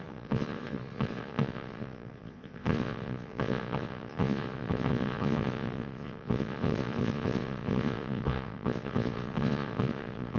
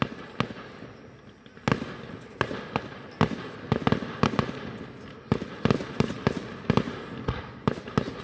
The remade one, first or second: first